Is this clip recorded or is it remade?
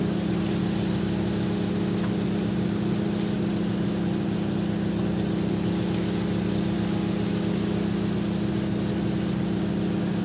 recorded